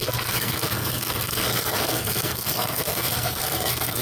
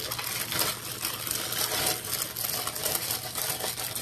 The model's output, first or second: first